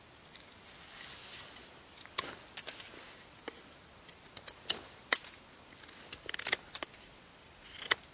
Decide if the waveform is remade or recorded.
recorded